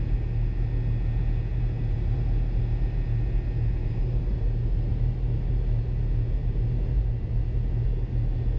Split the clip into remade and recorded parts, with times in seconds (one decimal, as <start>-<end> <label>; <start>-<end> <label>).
0.0-1.5 recorded; 1.5-2.6 remade; 2.6-3.8 recorded; 3.8-5.6 remade; 5.6-6.4 recorded; 6.4-7.3 remade; 7.3-8.6 recorded